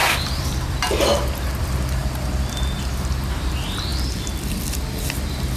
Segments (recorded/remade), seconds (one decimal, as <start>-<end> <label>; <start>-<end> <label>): 0.0-1.6 remade; 1.6-3.9 recorded; 3.9-4.4 remade; 4.4-5.6 recorded